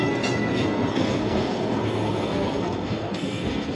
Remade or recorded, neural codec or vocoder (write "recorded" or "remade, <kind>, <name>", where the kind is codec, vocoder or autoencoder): remade, codec, SNAC